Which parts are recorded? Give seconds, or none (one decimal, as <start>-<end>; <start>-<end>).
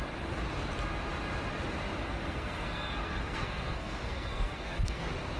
0.0-2.0; 5.0-5.4